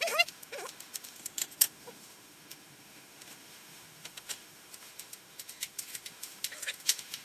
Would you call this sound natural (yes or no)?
no